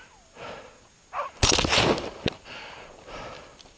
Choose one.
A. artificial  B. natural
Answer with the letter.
B